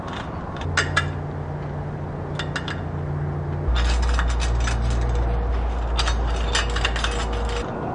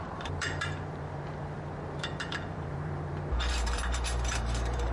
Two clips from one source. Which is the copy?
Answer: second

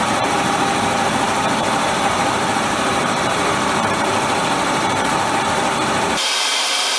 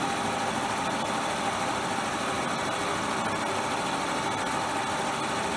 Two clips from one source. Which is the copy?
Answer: first